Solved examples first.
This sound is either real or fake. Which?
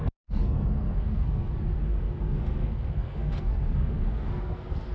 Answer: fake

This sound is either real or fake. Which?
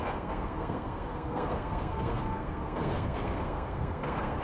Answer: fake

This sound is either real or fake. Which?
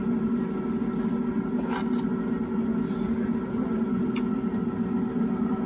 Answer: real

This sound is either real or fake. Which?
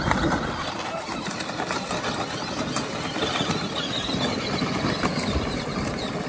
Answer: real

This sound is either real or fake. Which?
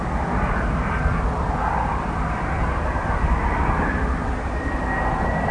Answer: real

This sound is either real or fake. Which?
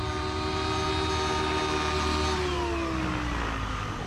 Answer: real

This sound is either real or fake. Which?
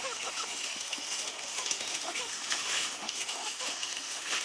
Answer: fake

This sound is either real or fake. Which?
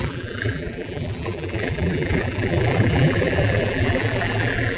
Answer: fake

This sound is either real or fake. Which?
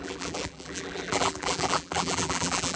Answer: fake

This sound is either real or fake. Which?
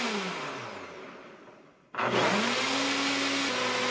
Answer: real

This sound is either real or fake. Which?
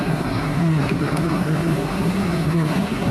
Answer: fake